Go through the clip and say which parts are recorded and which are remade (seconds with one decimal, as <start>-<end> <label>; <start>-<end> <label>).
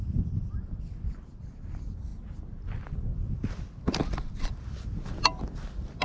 0.0-6.0 recorded